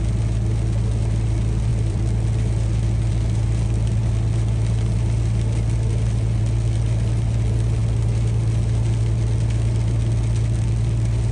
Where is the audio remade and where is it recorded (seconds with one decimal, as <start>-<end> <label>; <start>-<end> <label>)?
0.0-1.7 recorded; 1.7-6.4 remade; 6.4-11.3 recorded